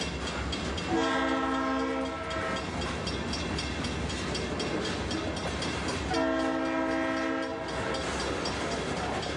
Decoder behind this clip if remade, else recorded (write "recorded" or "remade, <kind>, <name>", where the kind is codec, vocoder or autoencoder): recorded